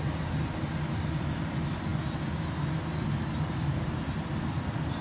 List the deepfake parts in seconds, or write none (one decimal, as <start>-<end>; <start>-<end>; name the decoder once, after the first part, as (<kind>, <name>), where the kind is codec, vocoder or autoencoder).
none